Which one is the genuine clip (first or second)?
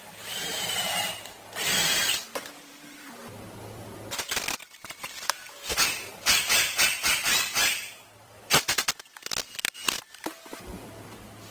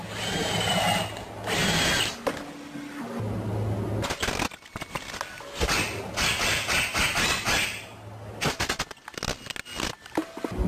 second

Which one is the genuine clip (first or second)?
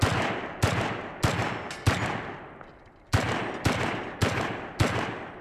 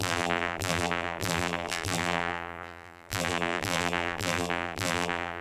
first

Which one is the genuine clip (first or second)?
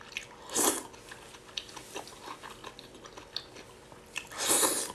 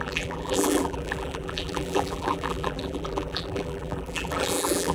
first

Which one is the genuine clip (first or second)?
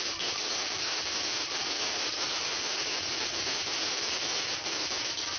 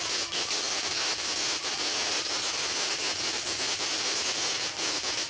second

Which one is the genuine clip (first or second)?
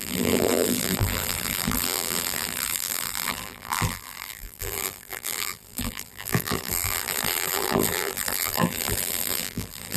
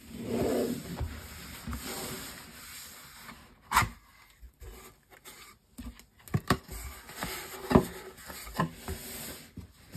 second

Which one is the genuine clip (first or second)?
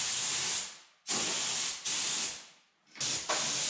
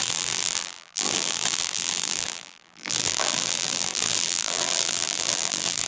first